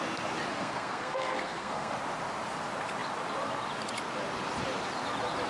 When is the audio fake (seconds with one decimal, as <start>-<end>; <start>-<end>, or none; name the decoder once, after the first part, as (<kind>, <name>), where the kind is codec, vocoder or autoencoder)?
0.5-1.9 (codec, SNAC)